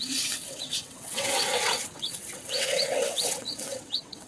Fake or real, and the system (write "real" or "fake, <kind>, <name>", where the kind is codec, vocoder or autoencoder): fake, vocoder, WaveNeXt